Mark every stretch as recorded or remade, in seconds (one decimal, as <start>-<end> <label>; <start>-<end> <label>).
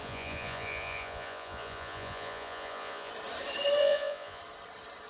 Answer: 0.0-3.1 remade; 3.1-3.8 recorded; 3.8-4.4 remade; 4.4-5.1 recorded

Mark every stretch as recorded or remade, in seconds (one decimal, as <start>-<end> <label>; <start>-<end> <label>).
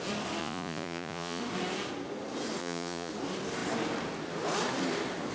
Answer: 0.0-0.4 recorded; 0.4-1.4 remade; 1.4-2.6 recorded; 2.6-3.1 remade; 3.1-5.3 recorded